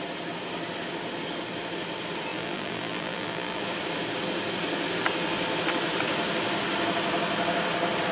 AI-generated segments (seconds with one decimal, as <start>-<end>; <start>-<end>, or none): 2.3-3.6